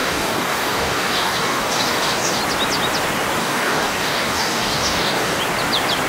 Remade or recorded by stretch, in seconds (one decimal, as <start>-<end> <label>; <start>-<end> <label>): 0.0-2.4 remade; 2.4-3.4 recorded; 3.4-5.4 remade; 5.4-6.1 recorded